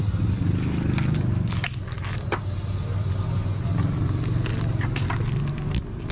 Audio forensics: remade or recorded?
recorded